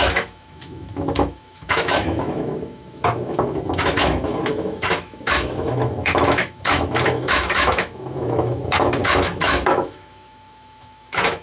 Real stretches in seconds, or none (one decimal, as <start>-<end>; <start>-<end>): none